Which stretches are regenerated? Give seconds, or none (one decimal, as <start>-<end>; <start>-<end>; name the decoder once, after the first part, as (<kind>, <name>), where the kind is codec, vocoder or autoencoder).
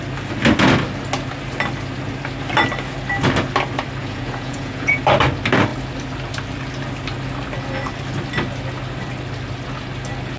4.0-5.0 (vocoder, Vocos)